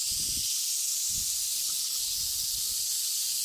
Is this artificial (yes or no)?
no